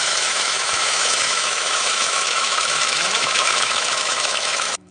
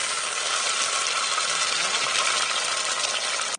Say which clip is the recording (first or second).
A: second